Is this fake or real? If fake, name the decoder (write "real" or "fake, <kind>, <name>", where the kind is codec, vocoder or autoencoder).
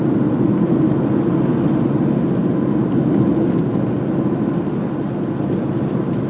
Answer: real